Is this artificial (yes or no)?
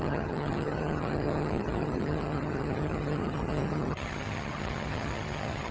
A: yes